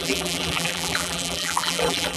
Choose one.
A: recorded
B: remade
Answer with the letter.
B